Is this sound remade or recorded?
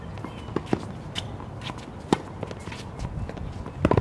recorded